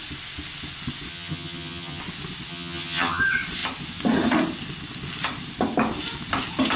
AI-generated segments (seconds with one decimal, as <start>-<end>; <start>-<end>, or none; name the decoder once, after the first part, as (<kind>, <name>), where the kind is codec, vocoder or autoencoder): 1.1-2.0 (vocoder, HiFi-GAN); 2.5-3.2